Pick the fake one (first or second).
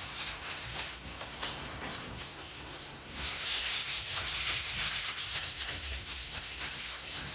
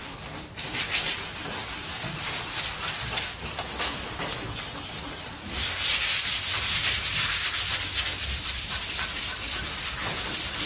first